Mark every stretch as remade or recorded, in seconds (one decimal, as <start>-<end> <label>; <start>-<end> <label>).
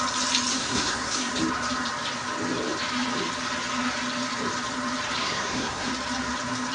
0.0-0.5 recorded; 0.5-1.3 remade; 1.3-5.2 recorded; 5.2-5.9 remade; 5.9-6.7 recorded